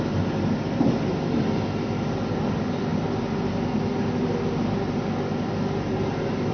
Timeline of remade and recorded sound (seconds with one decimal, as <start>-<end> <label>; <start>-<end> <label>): 0.0-6.5 recorded